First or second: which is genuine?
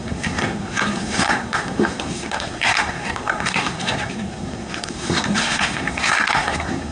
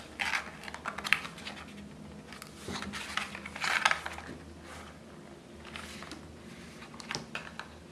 second